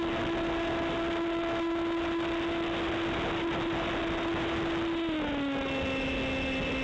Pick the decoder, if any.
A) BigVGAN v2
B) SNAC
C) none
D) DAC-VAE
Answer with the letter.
C